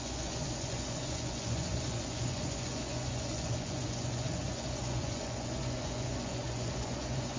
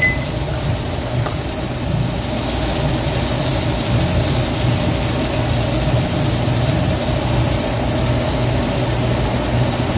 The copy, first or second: first